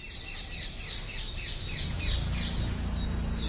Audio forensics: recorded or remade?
recorded